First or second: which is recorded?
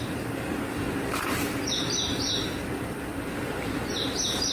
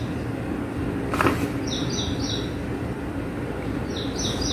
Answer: second